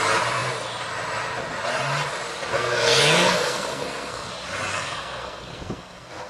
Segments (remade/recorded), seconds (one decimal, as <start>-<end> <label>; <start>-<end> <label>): 0.0-2.5 recorded; 2.5-4.3 remade; 4.3-4.7 recorded; 4.7-6.3 remade